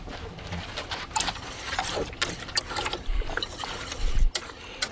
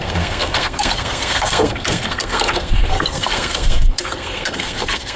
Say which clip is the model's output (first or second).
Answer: second